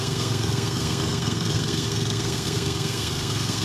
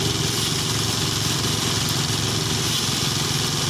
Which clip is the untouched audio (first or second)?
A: second